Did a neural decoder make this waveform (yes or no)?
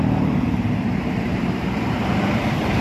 yes